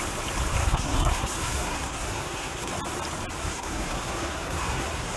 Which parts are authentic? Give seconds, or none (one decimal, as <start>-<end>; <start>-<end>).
0.0-0.6; 2.7-3.4

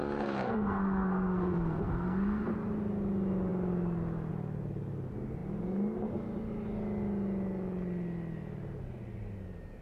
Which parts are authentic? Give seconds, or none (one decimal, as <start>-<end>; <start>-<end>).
2.5-9.8

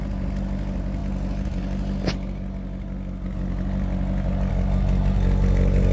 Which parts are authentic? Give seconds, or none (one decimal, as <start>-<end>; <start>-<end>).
0.0-5.9

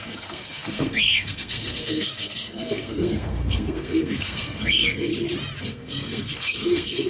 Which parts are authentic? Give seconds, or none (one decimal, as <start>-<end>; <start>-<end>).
5.1-5.6

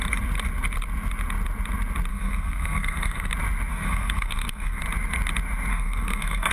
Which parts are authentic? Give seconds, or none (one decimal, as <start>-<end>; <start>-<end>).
0.0-2.1; 3.3-3.7; 4.8-5.7

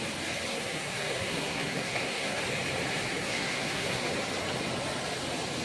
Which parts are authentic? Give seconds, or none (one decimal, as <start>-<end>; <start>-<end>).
0.0-0.5; 2.4-2.9; 4.1-5.6

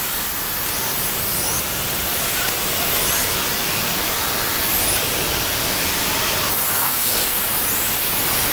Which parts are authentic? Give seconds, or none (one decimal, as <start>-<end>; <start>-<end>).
0.0-6.7; 7.4-8.5

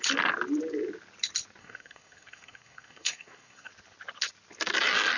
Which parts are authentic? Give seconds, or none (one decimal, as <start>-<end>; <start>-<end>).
0.0-1.6; 3.7-5.2